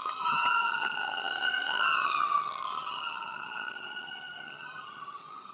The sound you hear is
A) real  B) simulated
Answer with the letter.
B